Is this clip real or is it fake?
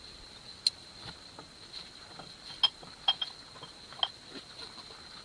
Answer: real